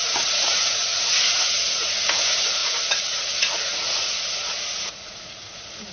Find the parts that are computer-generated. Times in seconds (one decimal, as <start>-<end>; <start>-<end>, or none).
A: 0.0-5.9

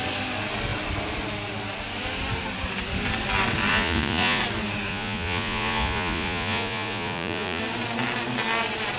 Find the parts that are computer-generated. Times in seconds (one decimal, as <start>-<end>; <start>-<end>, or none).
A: 3.7-4.4; 4.9-7.6